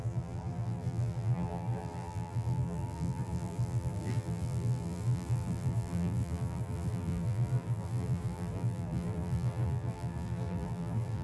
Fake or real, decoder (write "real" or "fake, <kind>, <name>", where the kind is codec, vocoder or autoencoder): fake, vocoder, BigVGAN v2